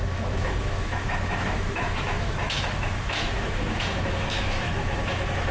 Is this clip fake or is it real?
fake